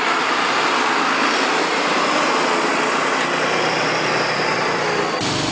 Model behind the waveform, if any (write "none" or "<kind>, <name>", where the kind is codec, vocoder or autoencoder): none